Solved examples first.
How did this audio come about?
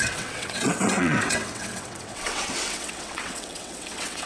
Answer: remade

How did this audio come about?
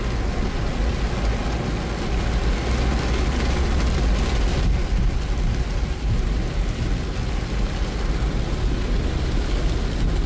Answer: recorded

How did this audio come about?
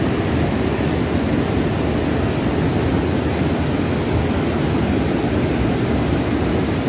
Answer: recorded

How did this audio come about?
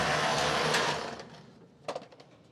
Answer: recorded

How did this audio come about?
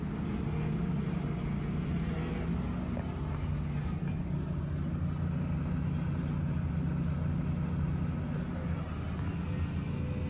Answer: recorded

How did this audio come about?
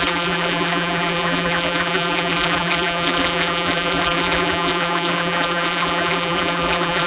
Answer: remade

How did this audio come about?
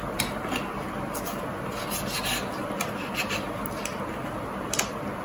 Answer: recorded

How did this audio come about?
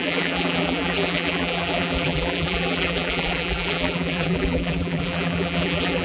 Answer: remade